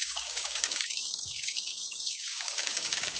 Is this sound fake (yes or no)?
yes